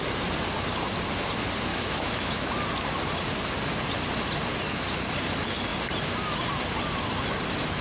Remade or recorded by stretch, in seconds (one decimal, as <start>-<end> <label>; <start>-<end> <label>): 0.0-1.7 recorded; 1.7-2.5 remade; 2.5-7.8 recorded